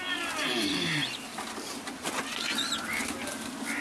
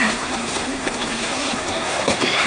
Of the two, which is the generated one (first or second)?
second